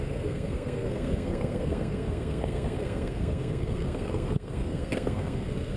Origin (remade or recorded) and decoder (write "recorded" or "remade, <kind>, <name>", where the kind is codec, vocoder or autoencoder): remade, codec, SNAC